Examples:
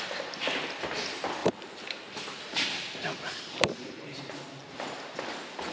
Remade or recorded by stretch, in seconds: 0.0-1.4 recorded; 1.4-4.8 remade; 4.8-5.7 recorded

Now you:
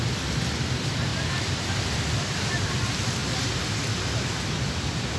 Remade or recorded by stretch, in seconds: 0.0-3.2 remade; 3.2-4.1 recorded; 4.1-5.2 remade

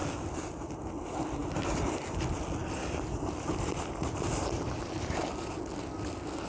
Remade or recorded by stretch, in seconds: 0.0-0.8 remade; 0.8-1.4 recorded; 1.4-2.2 remade; 2.2-2.6 recorded; 2.6-5.6 remade; 5.6-6.5 recorded